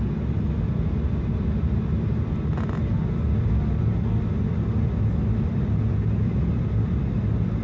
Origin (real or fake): real